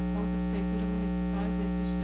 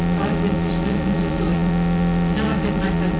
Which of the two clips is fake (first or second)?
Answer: second